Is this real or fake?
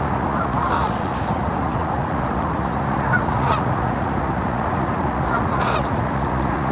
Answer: fake